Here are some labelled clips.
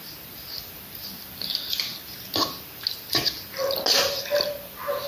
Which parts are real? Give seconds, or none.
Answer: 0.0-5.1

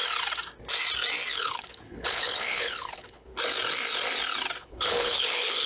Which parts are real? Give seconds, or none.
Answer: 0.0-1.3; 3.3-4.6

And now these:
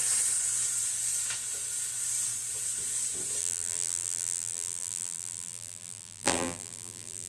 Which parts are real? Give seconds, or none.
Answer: 0.0-3.4

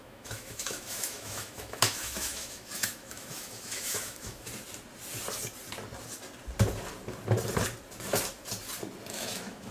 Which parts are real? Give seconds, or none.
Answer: 4.5-9.1

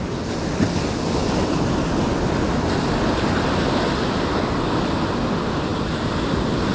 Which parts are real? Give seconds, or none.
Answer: 0.0-6.7

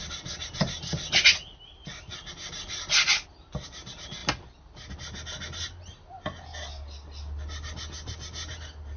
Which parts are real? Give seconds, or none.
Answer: 0.0-9.0

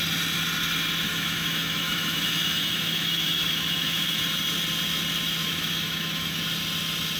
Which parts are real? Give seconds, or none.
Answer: 0.0-1.1; 4.2-5.4; 6.4-7.2